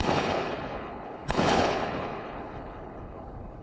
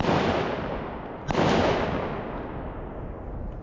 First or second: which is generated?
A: first